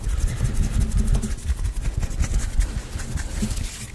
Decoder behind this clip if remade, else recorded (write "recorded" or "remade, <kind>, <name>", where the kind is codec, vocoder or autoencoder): recorded